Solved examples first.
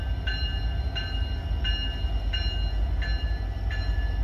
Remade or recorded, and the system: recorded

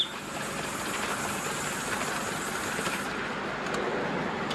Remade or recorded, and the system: recorded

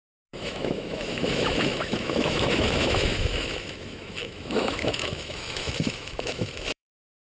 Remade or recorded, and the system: remade, autoencoder, DAC-VAE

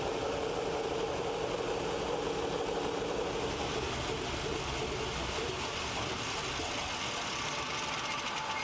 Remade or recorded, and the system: recorded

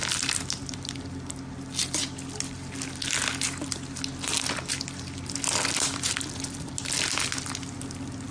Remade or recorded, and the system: recorded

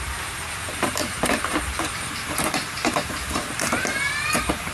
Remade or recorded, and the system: remade, vocoder, BigVGAN v2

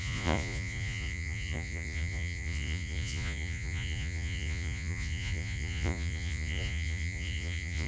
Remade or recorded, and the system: remade, vocoder, Vocos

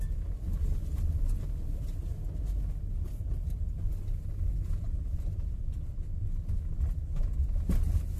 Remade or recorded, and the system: recorded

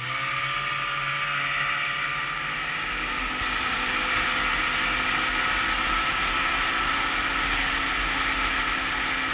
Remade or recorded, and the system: recorded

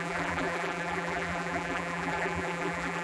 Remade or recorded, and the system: remade, vocoder, BigVGAN v2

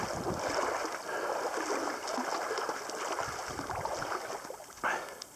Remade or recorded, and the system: recorded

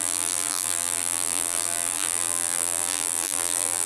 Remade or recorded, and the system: remade, vocoder, BigVGAN v2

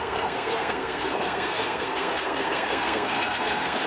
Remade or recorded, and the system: remade, codec, SNAC